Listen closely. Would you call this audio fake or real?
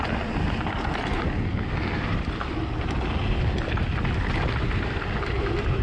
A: real